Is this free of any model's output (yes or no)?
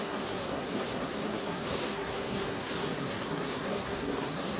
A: no